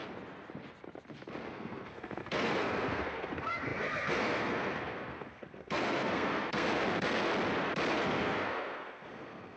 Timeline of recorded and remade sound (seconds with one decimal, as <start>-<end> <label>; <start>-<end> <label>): 0.0-1.5 recorded; 1.5-7.3 remade; 7.3-7.9 recorded; 7.9-9.6 remade